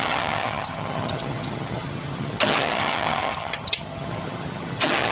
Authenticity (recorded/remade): remade